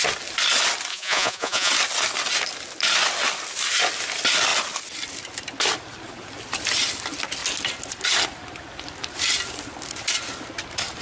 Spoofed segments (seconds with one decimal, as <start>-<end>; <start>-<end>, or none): 0.9-1.7